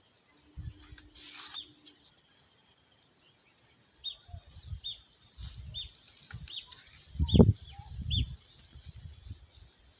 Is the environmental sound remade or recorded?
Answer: recorded